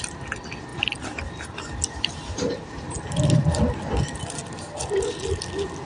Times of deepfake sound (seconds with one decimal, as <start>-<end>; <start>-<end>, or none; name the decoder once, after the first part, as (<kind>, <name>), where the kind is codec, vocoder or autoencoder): none